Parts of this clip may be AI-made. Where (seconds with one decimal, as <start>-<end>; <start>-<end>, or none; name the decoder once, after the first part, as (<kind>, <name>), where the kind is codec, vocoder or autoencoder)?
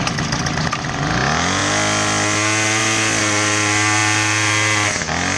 none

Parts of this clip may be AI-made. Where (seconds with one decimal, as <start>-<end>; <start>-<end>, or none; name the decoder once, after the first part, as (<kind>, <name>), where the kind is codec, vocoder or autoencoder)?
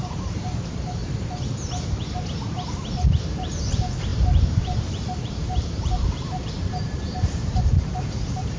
0.0-1.0 (vocoder, BigVGAN v2); 2.8-8.6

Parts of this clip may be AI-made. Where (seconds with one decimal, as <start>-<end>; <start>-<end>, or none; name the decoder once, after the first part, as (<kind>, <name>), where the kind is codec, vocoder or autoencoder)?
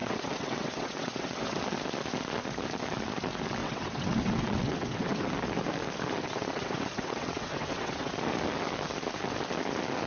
0.0-1.6 (vocoder, WaveNeXt); 3.6-5.3; 6.2-8.1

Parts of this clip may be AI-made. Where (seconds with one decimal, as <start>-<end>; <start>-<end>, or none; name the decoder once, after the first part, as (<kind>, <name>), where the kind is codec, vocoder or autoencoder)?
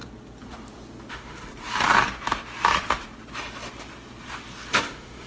1.1-1.5 (autoencoder, DAC-VAE); 4.7-5.3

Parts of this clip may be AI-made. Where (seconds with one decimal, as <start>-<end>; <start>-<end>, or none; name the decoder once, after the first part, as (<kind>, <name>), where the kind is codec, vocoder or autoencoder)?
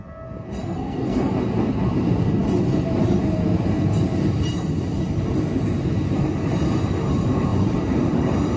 0.6-1.3 (codec, SNAC)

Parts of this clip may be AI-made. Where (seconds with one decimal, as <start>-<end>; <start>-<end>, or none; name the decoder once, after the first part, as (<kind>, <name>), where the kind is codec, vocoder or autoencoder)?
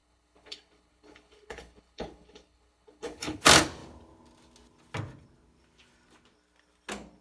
0.0-3.4 (codec, HILCodec)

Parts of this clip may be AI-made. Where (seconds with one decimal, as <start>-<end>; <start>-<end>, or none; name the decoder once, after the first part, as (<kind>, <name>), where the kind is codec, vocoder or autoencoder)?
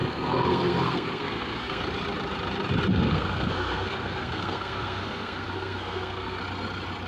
0.0-1.8 (codec, SNAC); 2.9-6.4